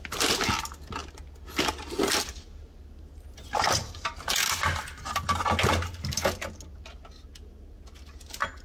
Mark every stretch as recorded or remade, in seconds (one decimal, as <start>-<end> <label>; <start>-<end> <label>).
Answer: 0.0-8.6 recorded